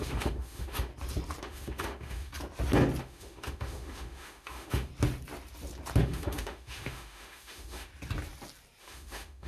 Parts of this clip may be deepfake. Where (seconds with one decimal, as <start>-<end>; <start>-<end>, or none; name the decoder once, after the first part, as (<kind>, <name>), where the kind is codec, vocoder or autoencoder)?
0.0-0.9 (autoencoder, DAC-VAE); 1.4-2.3; 3.0-4.9; 6.0-7.9; 8.8-9.5